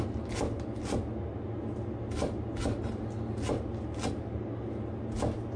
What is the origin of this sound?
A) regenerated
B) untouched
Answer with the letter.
B